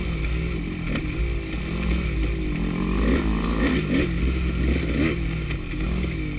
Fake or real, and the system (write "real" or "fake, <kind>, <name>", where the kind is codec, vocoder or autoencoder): real